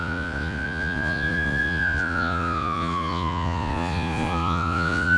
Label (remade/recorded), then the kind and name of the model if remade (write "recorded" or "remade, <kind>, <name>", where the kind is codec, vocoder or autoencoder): remade, vocoder, Vocos